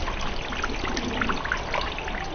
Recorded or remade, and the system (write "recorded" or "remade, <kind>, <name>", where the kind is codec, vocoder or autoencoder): recorded